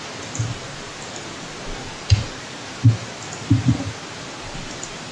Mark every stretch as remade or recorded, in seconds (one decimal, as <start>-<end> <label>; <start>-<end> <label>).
0.0-5.1 recorded

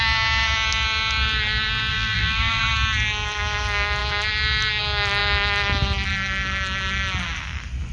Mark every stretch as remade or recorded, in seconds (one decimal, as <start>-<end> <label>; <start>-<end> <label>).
0.0-1.9 recorded; 1.9-2.6 remade; 2.6-7.9 recorded

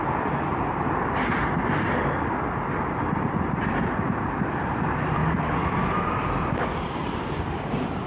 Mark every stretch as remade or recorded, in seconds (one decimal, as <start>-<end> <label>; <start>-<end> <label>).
0.0-8.1 remade

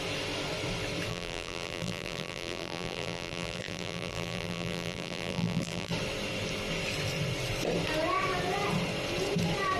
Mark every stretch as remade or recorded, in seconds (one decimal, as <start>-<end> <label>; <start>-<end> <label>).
0.0-1.1 recorded; 1.1-5.9 remade; 5.9-9.8 recorded

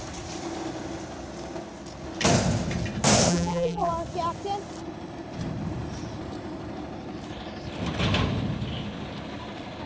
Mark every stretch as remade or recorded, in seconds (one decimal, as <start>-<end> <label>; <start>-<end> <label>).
0.0-3.3 recorded; 3.3-3.9 remade; 3.9-9.9 recorded

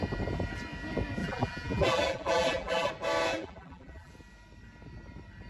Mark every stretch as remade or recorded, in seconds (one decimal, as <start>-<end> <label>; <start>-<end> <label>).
0.0-1.2 recorded; 1.2-2.9 remade; 2.9-3.3 recorded; 3.3-4.1 remade; 4.1-5.5 recorded

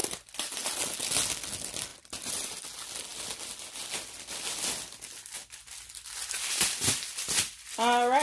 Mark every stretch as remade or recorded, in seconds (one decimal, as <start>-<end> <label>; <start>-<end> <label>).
0.0-1.9 recorded; 1.9-2.6 remade; 2.6-8.2 recorded